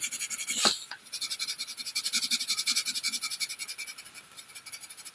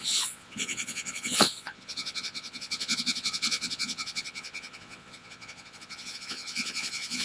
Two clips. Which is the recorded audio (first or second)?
first